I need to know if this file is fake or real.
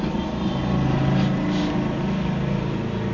real